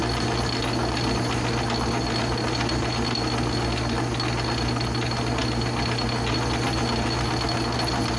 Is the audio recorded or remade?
recorded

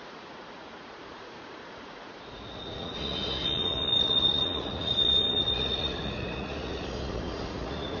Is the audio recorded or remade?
remade